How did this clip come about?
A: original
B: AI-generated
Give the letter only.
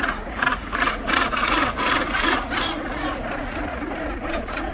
B